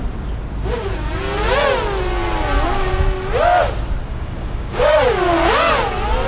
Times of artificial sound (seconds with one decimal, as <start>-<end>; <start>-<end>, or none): 4.1-5.0